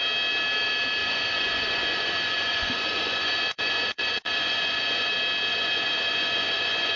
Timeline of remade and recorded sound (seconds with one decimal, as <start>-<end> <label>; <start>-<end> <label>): 0.0-1.0 recorded; 1.0-5.1 remade; 5.1-5.5 recorded; 5.5-7.0 remade